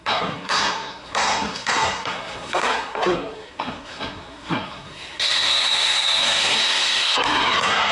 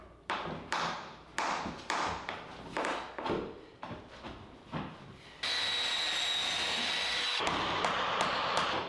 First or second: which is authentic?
second